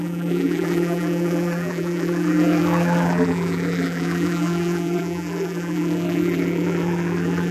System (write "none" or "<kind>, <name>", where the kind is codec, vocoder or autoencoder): vocoder, BigVGAN v2